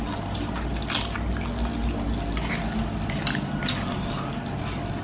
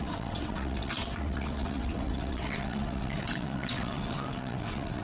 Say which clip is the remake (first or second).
second